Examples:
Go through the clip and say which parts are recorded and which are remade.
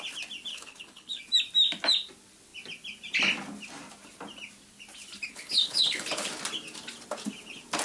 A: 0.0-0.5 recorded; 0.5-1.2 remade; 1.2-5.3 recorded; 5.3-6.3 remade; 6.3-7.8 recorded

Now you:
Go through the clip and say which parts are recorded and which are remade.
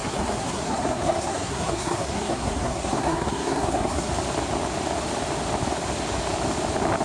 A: 0.0-4.1 remade; 4.1-7.0 recorded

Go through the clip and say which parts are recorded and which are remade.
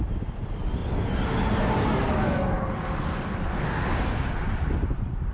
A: 0.0-5.3 recorded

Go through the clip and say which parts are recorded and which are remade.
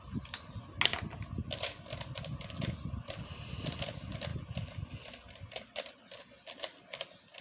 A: 0.0-7.4 recorded